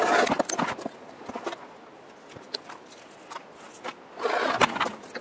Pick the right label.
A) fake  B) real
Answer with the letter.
B